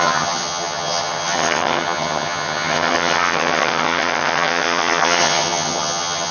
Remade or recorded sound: remade